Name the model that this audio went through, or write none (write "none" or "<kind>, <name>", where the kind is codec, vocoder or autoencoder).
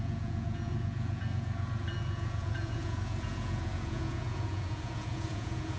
vocoder, Vocos